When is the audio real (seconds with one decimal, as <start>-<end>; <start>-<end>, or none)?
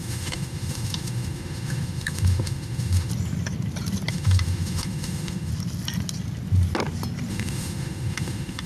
3.1-4.1; 5.5-7.3